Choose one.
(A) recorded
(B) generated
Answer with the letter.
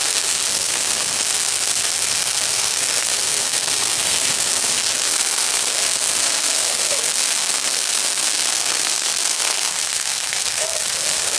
B